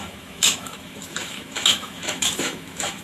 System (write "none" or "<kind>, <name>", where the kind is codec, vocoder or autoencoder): autoencoder, DAC-VAE